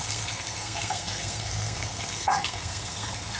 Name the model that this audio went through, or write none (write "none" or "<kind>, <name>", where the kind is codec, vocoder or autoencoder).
codec, SNAC